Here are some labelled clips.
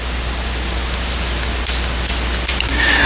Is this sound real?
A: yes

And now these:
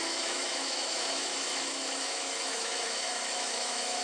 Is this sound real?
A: no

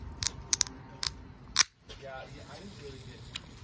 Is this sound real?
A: yes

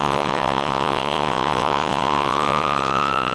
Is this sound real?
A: no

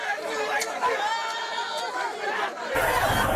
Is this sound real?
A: yes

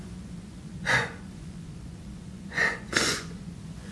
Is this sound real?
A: no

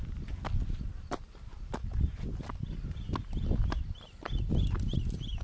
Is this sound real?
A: yes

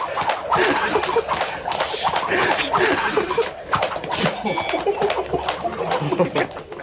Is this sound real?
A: yes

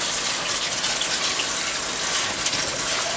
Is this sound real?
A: yes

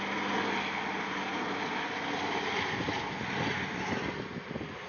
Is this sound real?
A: yes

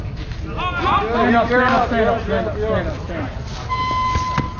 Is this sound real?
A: yes